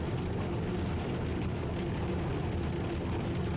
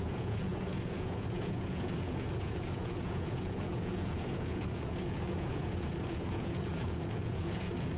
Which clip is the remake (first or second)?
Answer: second